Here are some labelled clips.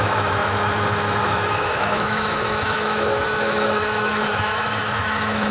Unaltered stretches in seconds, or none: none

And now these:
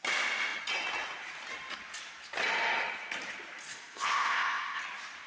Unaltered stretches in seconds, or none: 0.0-3.7; 4.8-5.3